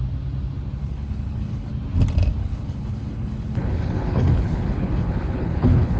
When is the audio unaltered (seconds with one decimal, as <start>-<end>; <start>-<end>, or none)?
0.0-0.8; 1.7-2.4

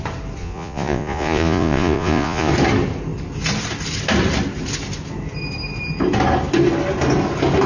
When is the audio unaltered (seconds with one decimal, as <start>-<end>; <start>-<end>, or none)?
0.0-0.4; 2.5-7.7

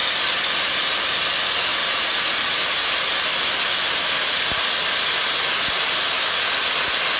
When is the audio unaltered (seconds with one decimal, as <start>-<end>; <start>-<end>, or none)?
0.0-1.7; 4.1-7.2

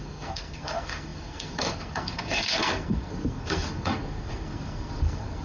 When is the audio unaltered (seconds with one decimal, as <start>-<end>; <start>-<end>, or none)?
none